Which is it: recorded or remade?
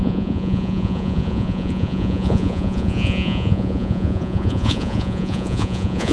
remade